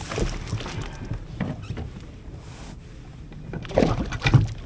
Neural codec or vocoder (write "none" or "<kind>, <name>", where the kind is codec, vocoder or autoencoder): none